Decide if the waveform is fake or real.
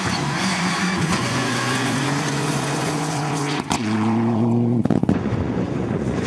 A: fake